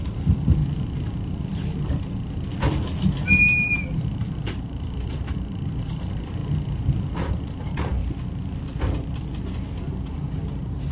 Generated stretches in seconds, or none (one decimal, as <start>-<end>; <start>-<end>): 0.0-0.6; 3.4-6.4; 7.1-8.0; 9.8-10.9